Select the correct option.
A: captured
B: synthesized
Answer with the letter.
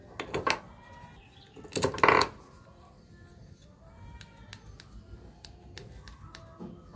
A